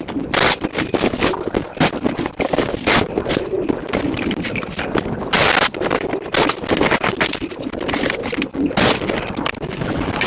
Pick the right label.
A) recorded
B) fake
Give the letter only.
A